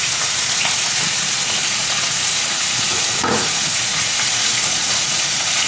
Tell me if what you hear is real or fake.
fake